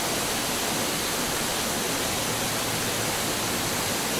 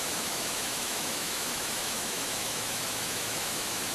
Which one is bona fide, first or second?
first